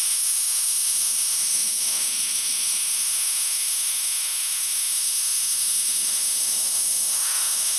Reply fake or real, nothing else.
fake